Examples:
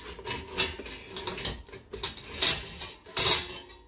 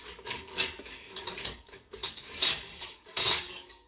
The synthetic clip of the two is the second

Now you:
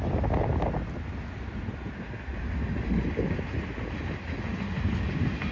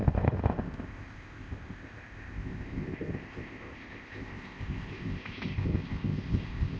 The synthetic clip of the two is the second